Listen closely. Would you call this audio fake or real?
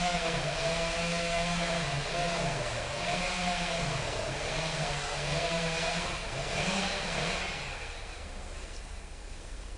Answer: fake